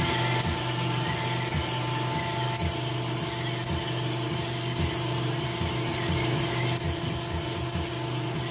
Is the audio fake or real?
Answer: real